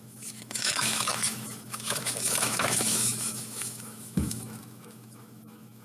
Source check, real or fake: fake